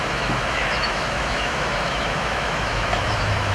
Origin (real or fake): fake